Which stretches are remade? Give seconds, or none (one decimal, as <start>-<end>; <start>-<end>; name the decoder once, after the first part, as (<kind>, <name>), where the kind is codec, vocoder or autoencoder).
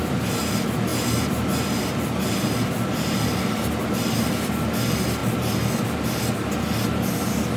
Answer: none